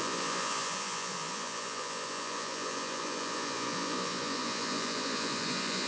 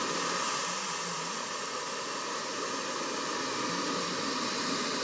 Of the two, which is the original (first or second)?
second